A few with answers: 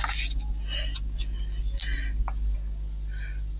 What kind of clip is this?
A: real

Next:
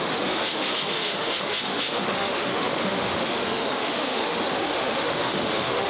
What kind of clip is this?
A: fake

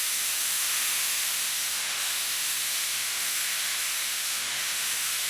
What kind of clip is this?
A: fake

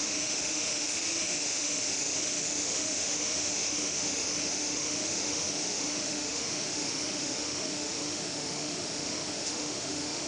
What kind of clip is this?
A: fake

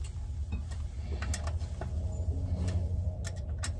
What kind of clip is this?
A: real